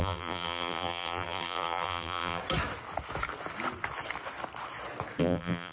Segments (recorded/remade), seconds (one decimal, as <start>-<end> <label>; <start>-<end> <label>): 0.0-2.4 remade; 2.4-5.2 recorded; 5.2-5.7 remade